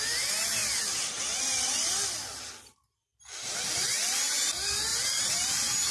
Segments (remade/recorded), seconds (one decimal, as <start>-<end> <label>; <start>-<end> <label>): 0.0-4.9 recorded; 4.9-5.9 remade